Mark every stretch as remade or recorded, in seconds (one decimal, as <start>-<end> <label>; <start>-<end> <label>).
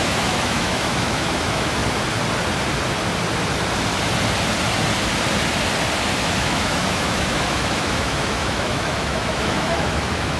0.0-1.8 remade; 1.8-6.4 recorded; 6.4-10.4 remade